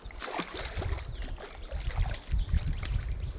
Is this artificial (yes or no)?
no